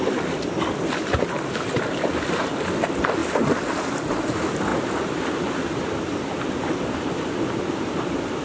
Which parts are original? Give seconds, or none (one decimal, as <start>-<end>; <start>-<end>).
none